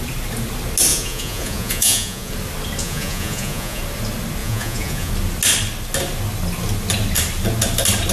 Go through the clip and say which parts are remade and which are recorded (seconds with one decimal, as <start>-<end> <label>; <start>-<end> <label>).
0.0-0.9 recorded; 0.9-2.3 remade; 2.3-2.8 recorded; 2.8-3.8 remade; 3.8-4.4 recorded; 4.4-5.1 remade; 5.1-8.1 recorded